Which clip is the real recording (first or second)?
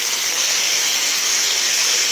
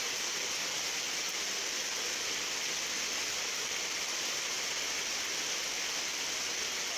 second